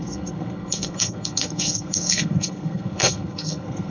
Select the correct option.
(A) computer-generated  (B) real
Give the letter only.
A